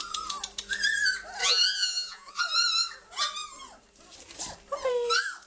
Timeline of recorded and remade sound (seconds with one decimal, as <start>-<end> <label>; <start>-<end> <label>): 0.0-1.4 recorded; 1.4-2.4 remade; 2.4-5.5 recorded